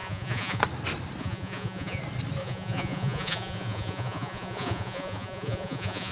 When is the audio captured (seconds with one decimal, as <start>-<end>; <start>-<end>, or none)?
0.6-1.2; 2.0-2.4